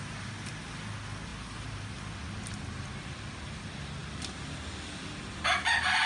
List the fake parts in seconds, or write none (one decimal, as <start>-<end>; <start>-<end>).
none